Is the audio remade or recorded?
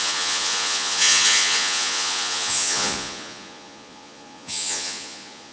remade